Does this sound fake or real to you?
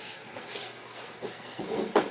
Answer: fake